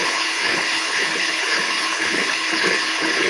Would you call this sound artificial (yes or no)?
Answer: yes